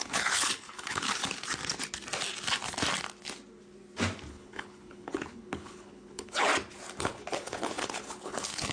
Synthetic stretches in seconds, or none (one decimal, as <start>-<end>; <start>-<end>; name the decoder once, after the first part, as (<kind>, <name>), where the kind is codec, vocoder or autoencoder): 0.0-1.2 (codec, HILCodec); 4.3-6.5; 7.0-8.7